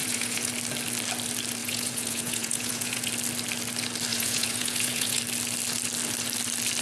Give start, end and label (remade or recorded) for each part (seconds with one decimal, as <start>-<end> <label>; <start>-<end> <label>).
0.0-0.5 remade; 0.5-1.6 recorded; 1.6-3.1 remade; 3.1-4.1 recorded; 4.1-5.2 remade; 5.2-6.8 recorded